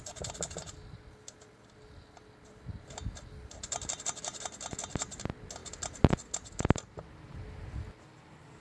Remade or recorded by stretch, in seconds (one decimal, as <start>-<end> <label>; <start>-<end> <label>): 0.0-8.6 recorded